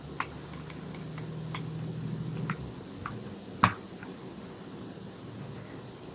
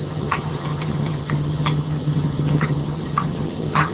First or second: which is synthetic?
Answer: second